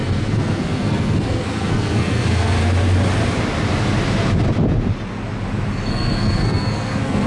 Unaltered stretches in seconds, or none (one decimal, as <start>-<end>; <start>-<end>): 2.6-5.9